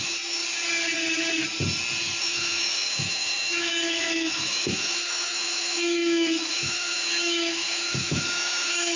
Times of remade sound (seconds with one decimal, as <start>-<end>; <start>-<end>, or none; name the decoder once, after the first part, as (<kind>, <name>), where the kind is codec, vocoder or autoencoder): 0.0-0.4 (autoencoder, DAC-VAE); 2.2-9.0